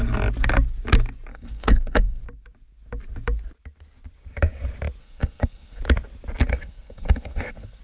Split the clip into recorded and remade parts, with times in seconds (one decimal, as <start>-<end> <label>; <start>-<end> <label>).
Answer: 0.0-1.3 recorded; 1.3-2.2 remade; 2.2-5.0 recorded; 5.0-5.8 remade; 5.8-6.5 recorded; 6.5-7.8 remade